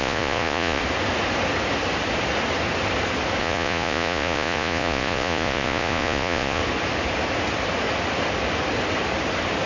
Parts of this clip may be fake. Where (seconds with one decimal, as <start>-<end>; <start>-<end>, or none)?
0.0-0.8; 3.4-6.6